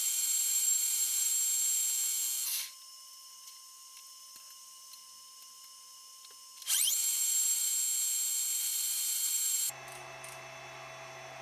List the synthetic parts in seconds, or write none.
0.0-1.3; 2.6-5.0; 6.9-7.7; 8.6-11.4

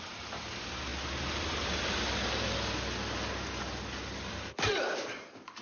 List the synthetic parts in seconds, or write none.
0.0-0.9; 4.3-5.6

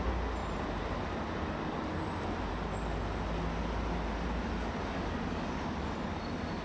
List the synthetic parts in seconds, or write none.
0.4-2.5

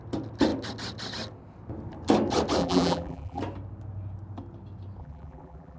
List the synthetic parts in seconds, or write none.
2.6-3.4; 5.0-5.8